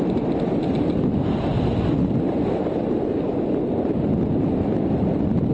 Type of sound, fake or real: real